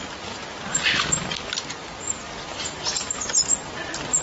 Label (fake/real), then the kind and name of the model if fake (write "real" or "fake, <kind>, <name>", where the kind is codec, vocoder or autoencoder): real